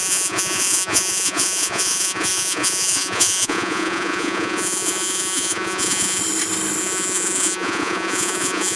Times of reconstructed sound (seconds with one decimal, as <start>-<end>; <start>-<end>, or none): 0.0-6.2; 6.8-8.8